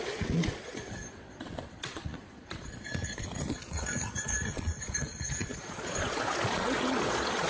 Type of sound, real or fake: fake